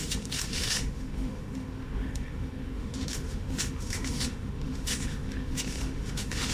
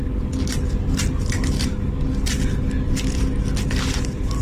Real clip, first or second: second